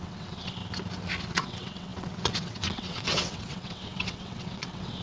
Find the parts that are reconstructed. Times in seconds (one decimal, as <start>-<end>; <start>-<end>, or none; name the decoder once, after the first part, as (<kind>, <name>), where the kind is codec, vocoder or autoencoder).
0.0-0.6 (vocoder, WaveNeXt); 1.2-5.0